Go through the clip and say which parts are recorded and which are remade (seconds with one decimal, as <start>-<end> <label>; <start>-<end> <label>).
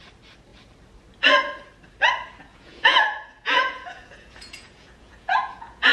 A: 0.0-2.5 recorded; 2.5-5.9 remade